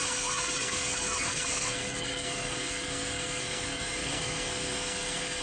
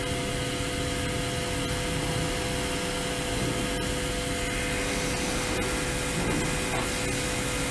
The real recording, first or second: second